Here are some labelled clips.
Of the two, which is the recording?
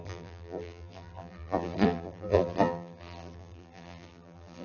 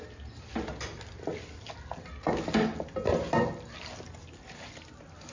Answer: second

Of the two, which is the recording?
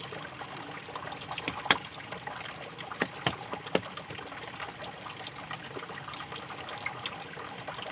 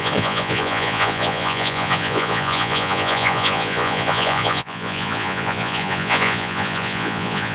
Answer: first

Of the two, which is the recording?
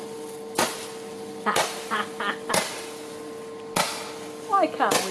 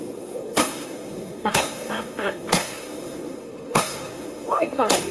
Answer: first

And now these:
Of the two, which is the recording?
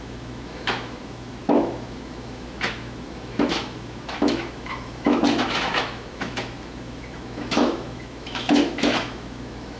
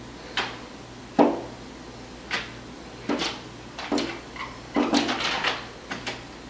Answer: second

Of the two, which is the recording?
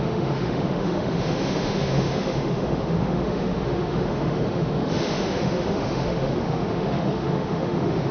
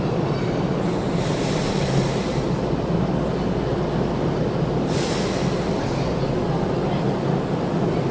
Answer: second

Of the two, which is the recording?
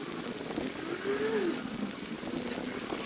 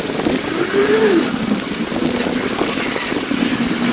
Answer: first